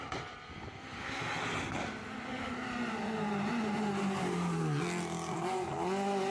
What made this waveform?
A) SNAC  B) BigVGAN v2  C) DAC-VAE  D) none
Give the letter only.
D